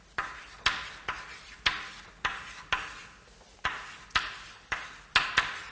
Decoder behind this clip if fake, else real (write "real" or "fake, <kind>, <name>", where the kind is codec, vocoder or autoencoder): real